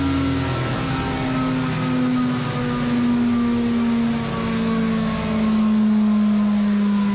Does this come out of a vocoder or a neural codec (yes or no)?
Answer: no